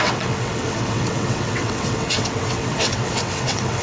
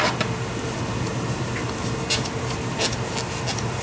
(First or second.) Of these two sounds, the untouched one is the second